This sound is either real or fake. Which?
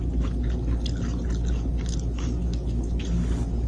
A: real